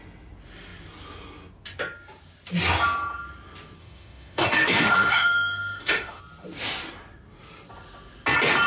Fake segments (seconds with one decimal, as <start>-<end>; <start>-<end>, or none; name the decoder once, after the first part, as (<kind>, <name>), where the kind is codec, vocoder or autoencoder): 3.8-6.2 (autoencoder, DAC-VAE)